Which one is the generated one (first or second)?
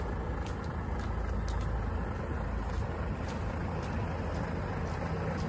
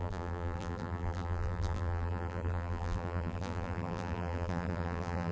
second